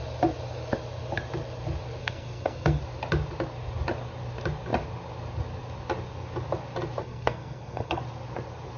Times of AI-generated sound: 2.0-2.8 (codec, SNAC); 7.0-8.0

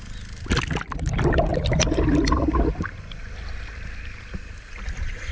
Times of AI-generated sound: none

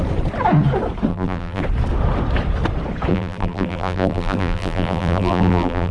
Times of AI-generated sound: 1.1-1.6 (vocoder, BigVGAN v2); 3.1-5.9

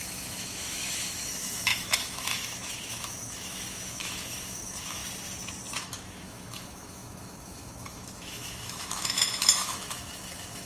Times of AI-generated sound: 0.0-5.0 (autoencoder, DAC-VAE); 5.8-10.7

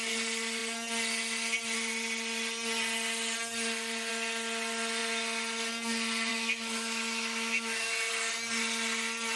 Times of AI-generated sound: 6.3-8.1 (autoencoder, DAC-VAE)

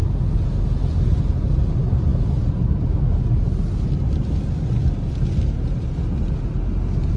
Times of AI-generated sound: none

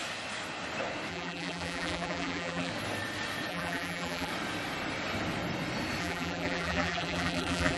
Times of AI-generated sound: 1.1-2.7 (vocoder, BigVGAN v2); 3.5-4.3; 6.0-7.8

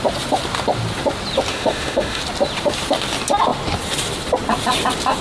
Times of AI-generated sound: 1.5-2.2 (autoencoder, DAC-VAE)